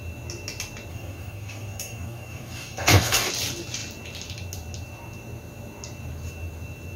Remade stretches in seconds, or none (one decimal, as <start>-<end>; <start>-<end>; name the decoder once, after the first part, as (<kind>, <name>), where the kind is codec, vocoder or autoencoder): 0.9-3.3 (codec, DAC)